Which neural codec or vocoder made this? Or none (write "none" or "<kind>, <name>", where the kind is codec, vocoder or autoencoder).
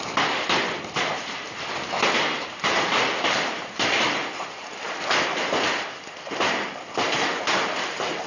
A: none